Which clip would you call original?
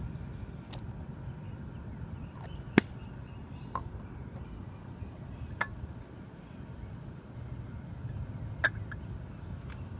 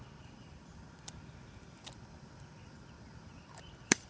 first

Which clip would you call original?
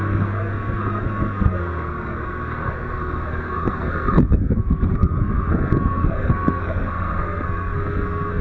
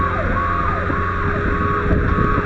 second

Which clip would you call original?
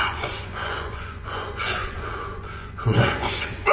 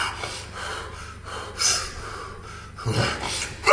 second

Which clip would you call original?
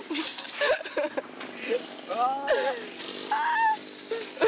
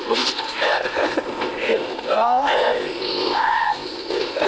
first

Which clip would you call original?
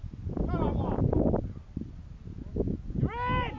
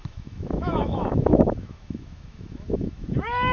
first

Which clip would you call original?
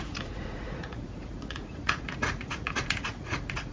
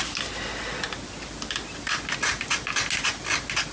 second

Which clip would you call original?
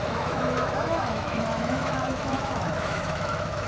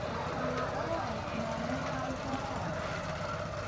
second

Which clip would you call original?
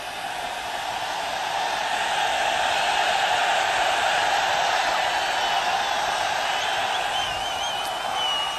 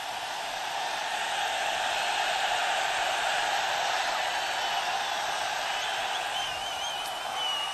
first